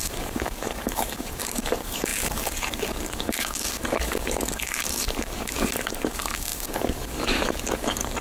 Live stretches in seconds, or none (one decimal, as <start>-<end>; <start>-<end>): none